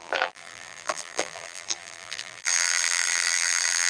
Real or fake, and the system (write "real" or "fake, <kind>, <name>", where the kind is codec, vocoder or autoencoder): fake, vocoder, BigVGAN v2